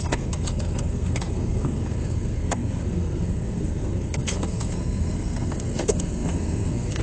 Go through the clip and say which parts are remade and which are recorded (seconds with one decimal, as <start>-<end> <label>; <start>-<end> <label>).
0.0-7.0 remade

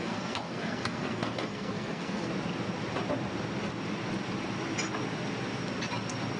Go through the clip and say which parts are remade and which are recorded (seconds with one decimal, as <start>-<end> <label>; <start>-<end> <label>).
0.0-2.3 remade; 2.3-6.4 recorded

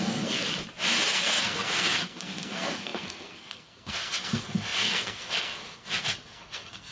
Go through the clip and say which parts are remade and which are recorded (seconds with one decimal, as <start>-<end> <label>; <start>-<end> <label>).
0.0-0.4 remade; 0.4-1.1 recorded; 1.1-6.9 remade

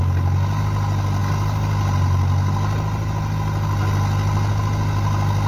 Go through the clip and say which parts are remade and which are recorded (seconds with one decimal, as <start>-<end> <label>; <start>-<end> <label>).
0.0-5.5 recorded

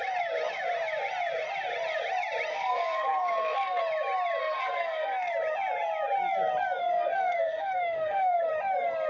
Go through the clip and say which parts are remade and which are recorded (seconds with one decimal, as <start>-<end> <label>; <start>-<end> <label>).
0.0-2.5 recorded; 2.5-3.8 remade; 3.8-4.4 recorded; 4.4-5.3 remade; 5.3-6.8 recorded; 6.8-8.5 remade; 8.5-9.1 recorded

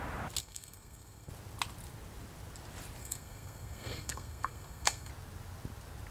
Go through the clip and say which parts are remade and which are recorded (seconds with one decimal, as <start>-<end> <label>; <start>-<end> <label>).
0.0-0.4 recorded; 0.4-1.3 remade; 1.3-3.0 recorded; 3.0-5.1 remade; 5.1-6.1 recorded

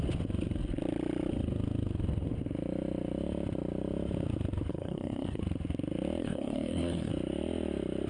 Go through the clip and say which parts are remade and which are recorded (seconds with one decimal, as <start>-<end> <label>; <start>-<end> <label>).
0.0-4.7 recorded; 4.7-5.4 remade; 5.4-6.2 recorded; 6.2-7.1 remade; 7.1-8.1 recorded